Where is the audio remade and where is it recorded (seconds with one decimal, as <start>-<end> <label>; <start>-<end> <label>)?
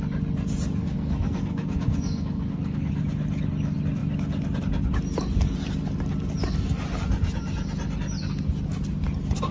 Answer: 0.0-0.8 recorded; 0.8-2.9 remade; 2.9-9.5 recorded